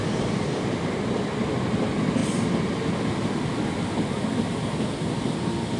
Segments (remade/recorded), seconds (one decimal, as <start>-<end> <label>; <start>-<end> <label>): 0.0-0.6 remade; 0.6-5.8 recorded